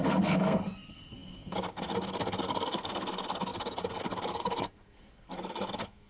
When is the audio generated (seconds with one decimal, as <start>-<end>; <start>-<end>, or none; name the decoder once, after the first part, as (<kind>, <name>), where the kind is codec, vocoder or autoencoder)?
0.0-6.1 (codec, SNAC)